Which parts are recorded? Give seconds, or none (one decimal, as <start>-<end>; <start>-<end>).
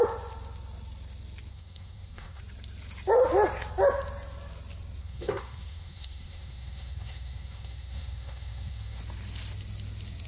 0.0-1.5; 2.4-5.0; 9.0-10.3